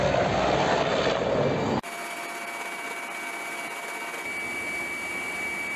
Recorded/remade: recorded